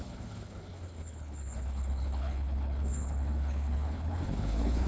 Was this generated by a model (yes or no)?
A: yes